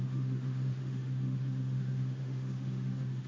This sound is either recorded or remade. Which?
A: remade